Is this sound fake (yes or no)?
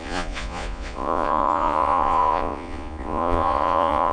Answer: yes